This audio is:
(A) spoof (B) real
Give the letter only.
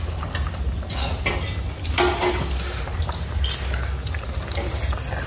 B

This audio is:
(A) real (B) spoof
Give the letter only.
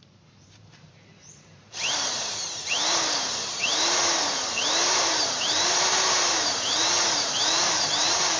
B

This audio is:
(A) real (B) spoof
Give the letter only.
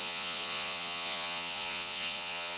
B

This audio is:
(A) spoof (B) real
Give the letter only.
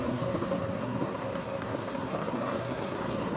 A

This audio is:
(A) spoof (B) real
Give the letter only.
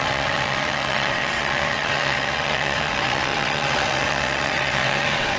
A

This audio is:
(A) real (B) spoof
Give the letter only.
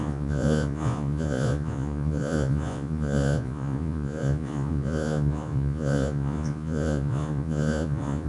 B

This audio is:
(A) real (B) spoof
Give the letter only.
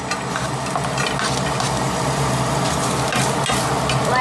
A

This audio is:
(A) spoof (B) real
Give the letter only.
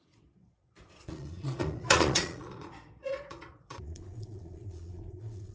A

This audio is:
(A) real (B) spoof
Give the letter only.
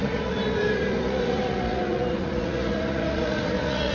B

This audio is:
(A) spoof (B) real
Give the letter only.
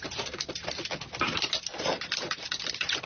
B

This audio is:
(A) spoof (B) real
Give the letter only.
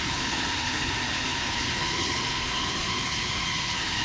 A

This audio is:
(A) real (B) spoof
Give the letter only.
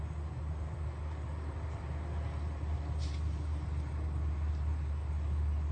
A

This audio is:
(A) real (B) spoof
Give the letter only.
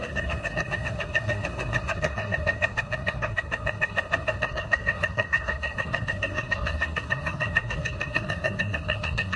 B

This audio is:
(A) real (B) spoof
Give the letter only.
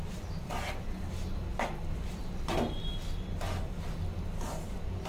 A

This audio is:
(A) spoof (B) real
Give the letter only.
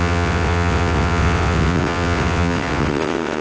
A